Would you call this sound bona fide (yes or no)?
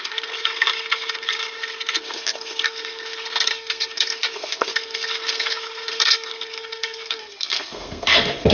no